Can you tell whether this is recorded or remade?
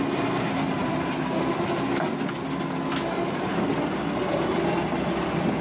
recorded